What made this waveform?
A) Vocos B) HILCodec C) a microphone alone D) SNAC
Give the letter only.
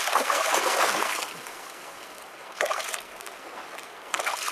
D